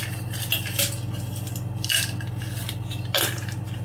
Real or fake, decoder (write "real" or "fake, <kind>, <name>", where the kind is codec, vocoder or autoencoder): real